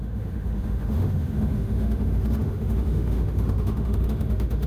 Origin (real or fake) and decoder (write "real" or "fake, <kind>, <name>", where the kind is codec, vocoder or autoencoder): fake, autoencoder, DAC-VAE